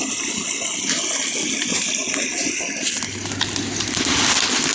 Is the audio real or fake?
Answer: real